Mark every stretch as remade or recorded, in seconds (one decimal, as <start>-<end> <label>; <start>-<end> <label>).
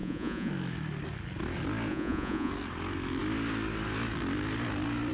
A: 0.0-0.5 remade; 0.5-1.9 recorded; 1.9-2.5 remade; 2.5-5.1 recorded